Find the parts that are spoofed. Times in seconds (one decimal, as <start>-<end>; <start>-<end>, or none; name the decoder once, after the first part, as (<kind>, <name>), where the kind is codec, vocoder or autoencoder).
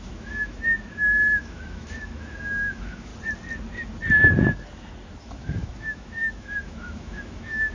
0.0-3.1 (autoencoder, DAC-VAE); 5.2-7.7